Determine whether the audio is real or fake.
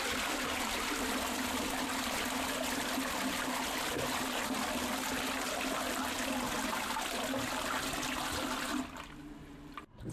real